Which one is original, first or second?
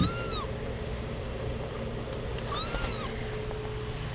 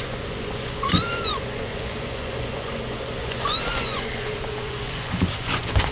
first